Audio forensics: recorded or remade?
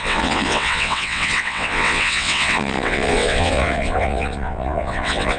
remade